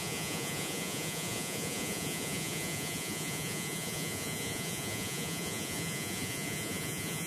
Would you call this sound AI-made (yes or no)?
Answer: yes